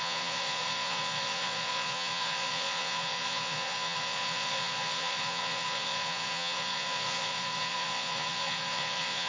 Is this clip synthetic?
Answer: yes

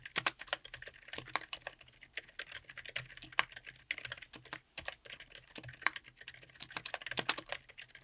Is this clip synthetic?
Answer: no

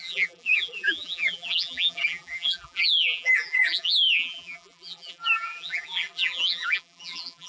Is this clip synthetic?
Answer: yes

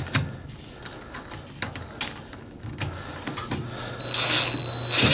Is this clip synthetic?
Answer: no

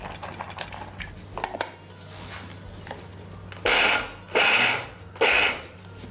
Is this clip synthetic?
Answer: no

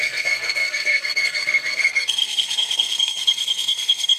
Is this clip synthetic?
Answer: yes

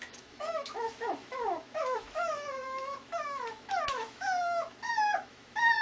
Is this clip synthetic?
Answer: yes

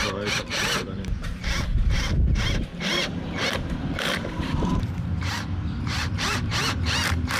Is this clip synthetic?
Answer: yes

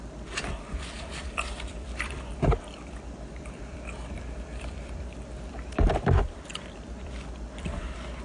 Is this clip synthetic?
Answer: yes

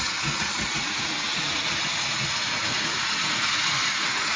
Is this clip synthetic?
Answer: yes